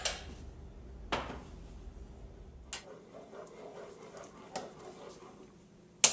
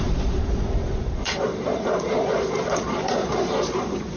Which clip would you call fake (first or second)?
second